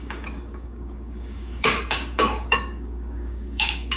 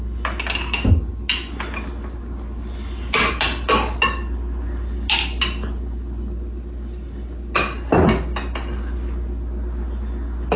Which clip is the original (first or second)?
second